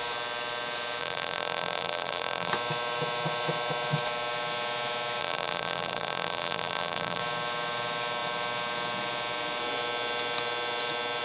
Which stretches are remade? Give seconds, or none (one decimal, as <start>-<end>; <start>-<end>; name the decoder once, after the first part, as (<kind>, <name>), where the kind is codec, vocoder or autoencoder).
1.0-2.5 (vocoder, BigVGAN v2); 5.2-7.2